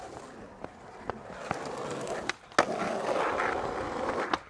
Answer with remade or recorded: recorded